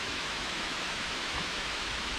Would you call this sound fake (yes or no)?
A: yes